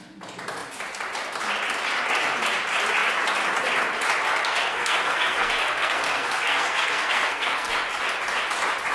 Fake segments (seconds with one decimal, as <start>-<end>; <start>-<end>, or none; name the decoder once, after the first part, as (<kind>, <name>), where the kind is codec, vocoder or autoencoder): 4.4-7.7 (codec, SNAC)